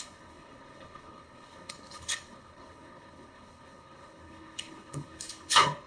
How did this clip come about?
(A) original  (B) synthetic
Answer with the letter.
B